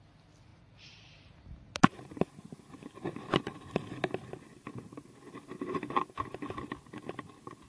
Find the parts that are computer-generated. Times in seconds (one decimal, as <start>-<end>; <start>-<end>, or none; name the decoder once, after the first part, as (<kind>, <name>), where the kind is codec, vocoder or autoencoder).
0.5-2.9 (vocoder, BigVGAN v2); 4.6-6.2